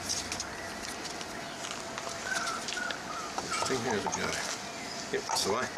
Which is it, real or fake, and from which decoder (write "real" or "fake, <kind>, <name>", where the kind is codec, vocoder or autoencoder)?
real